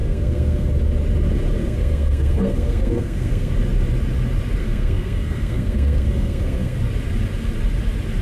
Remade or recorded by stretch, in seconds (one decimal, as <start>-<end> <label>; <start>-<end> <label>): 0.0-0.7 remade; 0.7-1.6 recorded; 1.6-3.5 remade; 3.5-4.6 recorded; 4.6-6.8 remade; 6.8-8.2 recorded